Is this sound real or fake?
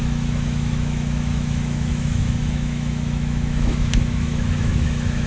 fake